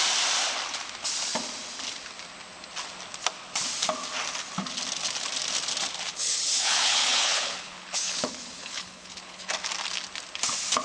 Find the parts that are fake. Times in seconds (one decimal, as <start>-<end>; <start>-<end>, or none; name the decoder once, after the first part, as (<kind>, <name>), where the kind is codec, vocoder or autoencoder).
6.1-9.5 (codec, HILCodec)